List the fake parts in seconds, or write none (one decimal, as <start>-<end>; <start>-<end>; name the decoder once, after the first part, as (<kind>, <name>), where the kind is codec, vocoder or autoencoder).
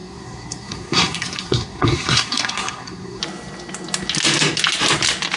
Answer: 0.0-3.2 (codec, SNAC)